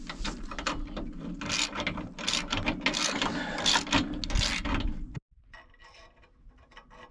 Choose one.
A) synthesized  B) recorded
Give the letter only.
B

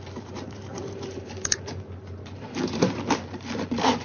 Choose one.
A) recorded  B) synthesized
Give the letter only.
B